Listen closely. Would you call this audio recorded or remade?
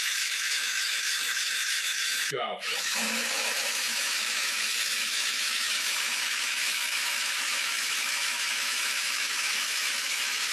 remade